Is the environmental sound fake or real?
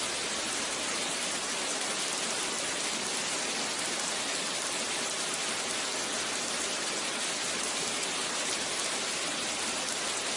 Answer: real